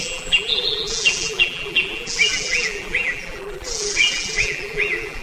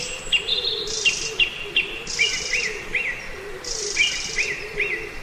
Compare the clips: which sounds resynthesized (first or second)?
first